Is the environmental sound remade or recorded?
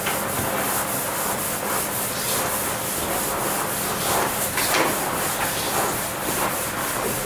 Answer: recorded